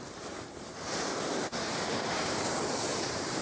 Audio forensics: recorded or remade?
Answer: remade